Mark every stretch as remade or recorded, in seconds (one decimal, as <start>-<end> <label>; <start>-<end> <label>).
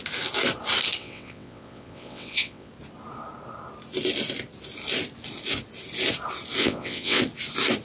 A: 0.0-1.0 recorded; 1.0-2.7 remade; 2.7-6.6 recorded; 6.6-7.2 remade; 7.2-7.8 recorded